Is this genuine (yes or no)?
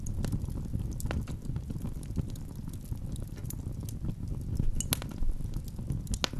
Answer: yes